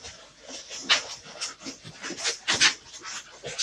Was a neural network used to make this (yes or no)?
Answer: no